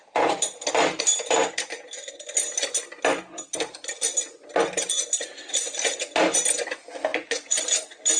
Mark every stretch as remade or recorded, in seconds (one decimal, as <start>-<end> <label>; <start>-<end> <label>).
0.0-7.1 recorded; 7.1-7.6 remade; 7.6-8.2 recorded